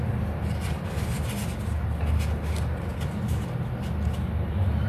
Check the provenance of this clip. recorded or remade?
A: recorded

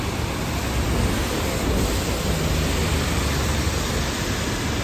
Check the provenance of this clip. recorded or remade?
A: recorded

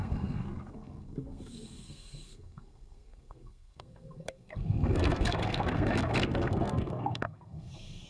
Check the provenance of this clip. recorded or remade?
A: remade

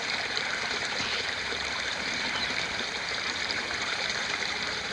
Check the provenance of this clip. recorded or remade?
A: remade